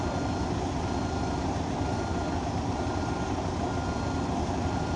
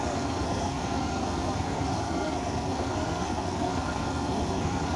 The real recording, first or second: first